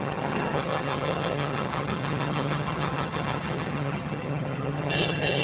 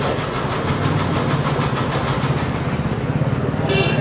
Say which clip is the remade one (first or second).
first